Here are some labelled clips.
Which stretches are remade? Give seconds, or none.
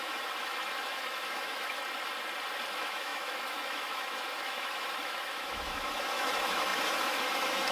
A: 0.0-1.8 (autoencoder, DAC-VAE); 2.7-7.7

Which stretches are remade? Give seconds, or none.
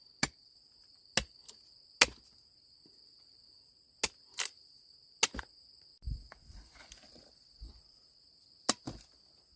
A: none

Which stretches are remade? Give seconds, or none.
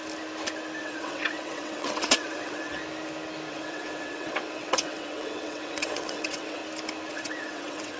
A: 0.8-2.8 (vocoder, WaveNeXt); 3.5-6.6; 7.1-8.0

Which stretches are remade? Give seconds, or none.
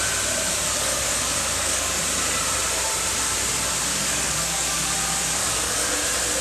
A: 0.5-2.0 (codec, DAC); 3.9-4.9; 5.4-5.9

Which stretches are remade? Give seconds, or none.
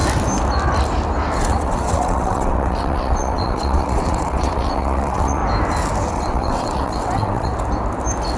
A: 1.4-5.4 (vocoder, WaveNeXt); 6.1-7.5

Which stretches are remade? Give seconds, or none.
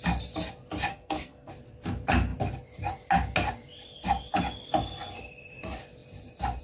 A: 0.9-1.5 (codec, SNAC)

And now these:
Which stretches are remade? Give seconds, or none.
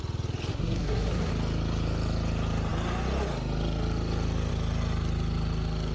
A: 0.5-1.3 (codec, SNAC)